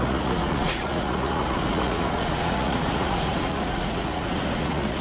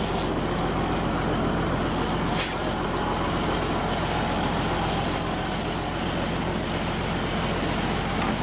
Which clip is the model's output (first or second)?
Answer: first